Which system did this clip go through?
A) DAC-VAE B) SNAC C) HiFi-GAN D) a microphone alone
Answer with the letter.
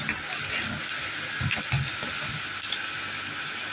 D